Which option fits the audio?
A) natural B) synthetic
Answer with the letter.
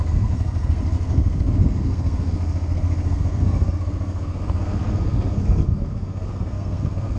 B